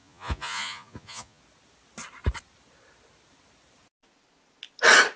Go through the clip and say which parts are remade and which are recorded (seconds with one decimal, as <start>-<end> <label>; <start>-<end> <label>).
0.0-1.4 remade; 1.4-5.2 recorded